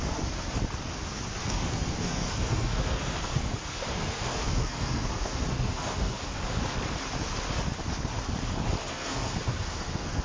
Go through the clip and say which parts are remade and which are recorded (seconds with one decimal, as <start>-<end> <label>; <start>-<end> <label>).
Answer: 0.0-1.4 recorded; 1.4-3.4 remade; 3.4-3.9 recorded; 3.9-6.4 remade; 6.4-8.9 recorded; 8.9-10.2 remade